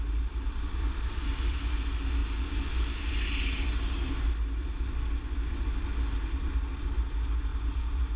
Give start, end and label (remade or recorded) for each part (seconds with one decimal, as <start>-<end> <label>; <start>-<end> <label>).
0.0-8.2 recorded